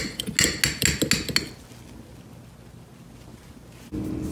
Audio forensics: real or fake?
real